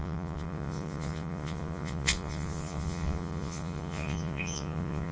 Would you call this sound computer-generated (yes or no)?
yes